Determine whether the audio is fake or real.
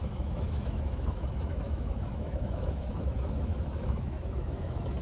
fake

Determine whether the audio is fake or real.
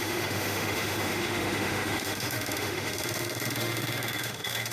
fake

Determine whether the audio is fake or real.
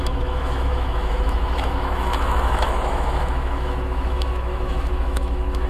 fake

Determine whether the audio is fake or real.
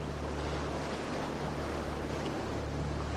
real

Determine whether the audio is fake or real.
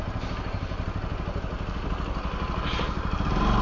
real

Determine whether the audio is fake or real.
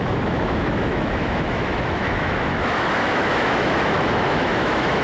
fake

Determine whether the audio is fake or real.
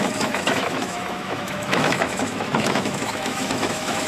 fake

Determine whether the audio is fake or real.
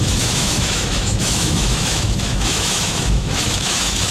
fake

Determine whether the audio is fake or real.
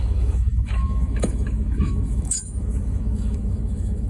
fake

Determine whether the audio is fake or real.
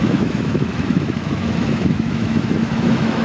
fake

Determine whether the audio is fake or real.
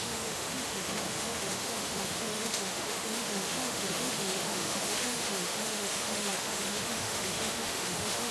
fake